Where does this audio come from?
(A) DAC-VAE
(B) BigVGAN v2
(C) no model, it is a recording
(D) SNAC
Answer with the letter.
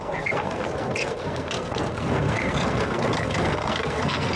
D